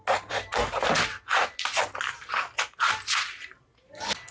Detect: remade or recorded recorded